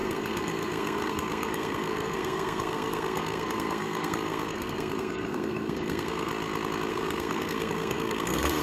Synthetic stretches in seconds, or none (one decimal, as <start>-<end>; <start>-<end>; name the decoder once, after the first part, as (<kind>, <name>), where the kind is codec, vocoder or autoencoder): 0.0-6.3 (codec, SNAC); 6.9-8.6